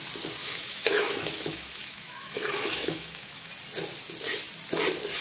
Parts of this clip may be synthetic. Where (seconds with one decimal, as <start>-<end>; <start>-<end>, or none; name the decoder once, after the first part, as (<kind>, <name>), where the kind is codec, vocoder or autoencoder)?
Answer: 0.4-3.5 (autoencoder, DAC-VAE)